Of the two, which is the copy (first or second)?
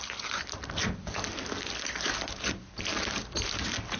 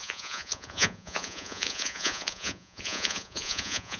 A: second